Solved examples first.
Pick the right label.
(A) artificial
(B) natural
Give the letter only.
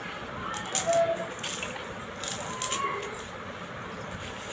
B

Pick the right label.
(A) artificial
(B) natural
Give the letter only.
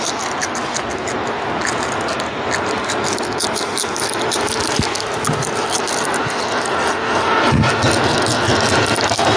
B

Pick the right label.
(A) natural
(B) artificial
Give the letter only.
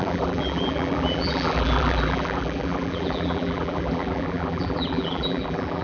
B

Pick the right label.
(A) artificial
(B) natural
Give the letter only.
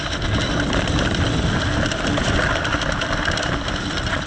A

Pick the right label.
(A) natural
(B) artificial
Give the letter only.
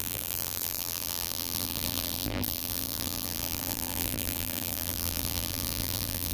B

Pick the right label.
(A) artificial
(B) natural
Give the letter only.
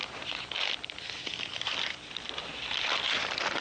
A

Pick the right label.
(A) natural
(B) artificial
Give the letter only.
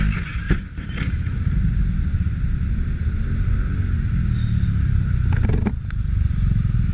A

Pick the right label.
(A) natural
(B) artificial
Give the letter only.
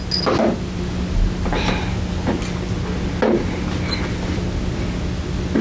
A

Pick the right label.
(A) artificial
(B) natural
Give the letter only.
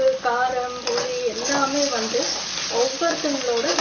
B